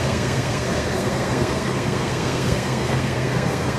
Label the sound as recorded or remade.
remade